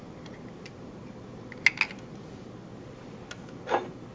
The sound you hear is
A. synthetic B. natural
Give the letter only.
B